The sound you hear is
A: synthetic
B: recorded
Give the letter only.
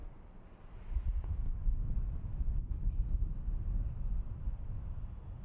B